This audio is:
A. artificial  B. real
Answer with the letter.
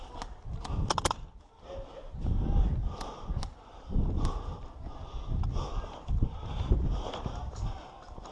B